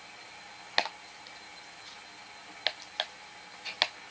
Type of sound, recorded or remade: recorded